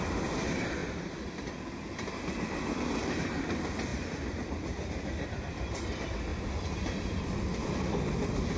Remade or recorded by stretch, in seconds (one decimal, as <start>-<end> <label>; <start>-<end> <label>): 0.0-6.3 remade; 6.3-7.1 recorded; 7.1-8.6 remade